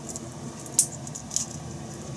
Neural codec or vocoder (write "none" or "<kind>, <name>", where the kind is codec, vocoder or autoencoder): none